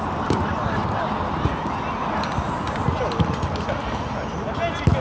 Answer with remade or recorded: recorded